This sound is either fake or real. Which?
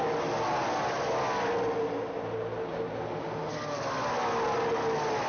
real